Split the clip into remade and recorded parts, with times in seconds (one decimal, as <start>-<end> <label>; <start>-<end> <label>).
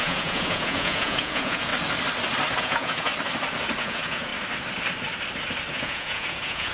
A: 0.0-1.7 remade; 1.7-2.6 recorded; 2.6-3.1 remade; 3.1-3.8 recorded; 3.8-4.3 remade; 4.3-5.7 recorded; 5.7-6.7 remade